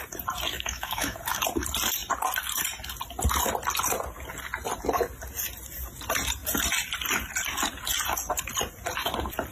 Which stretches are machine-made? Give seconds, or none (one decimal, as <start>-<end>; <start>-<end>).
0.5-1.2